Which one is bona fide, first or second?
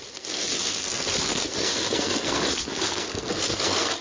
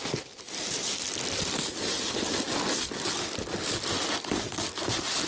second